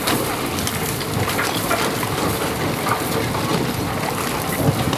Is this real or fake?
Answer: real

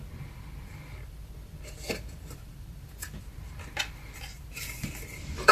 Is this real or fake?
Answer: fake